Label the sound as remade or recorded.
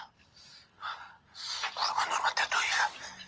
recorded